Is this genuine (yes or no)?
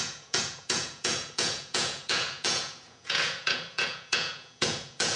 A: no